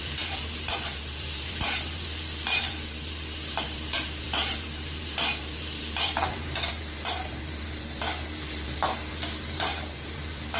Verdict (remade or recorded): remade